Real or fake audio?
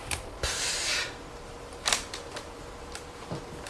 fake